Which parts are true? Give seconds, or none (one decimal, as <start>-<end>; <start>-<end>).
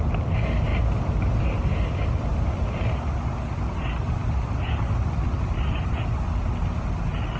0.0-7.4